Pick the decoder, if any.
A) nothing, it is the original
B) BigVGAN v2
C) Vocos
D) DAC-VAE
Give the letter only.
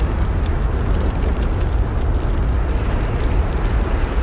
A